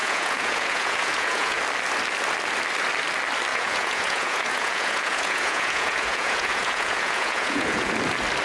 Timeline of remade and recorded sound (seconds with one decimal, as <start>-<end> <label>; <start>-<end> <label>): 0.0-1.6 remade; 1.6-3.5 recorded; 3.5-7.9 remade; 7.9-8.4 recorded